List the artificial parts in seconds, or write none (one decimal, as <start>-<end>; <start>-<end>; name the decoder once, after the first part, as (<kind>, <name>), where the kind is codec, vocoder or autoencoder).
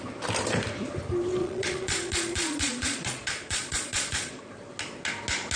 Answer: 1.4-4.4 (vocoder, Vocos)